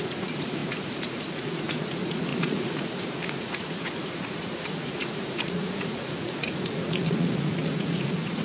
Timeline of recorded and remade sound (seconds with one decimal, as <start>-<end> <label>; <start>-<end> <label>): 0.0-8.4 remade